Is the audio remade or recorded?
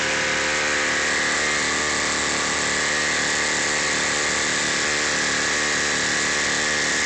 recorded